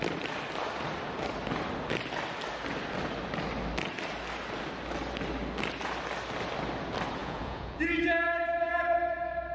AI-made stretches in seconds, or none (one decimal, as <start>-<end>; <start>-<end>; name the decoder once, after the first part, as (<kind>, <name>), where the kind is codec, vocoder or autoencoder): 7.2-7.8 (vocoder, Vocos)